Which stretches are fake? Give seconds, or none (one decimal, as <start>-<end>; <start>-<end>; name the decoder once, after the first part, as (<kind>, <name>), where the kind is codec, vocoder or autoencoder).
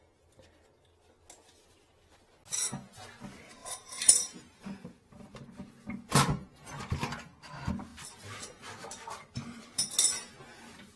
3.6-5.7 (vocoder, BigVGAN v2); 7.9-9.9